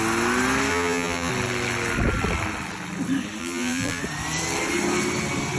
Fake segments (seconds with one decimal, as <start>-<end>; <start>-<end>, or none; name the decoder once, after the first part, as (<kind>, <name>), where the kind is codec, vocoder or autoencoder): 0.7-1.3 (vocoder, BigVGAN v2); 3.4-4.0